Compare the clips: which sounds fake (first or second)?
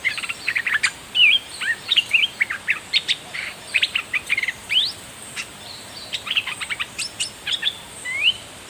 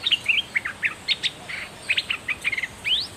first